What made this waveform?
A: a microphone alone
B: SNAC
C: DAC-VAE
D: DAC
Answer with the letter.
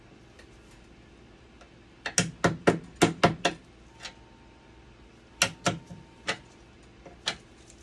A